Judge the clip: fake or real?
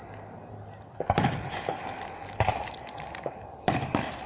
real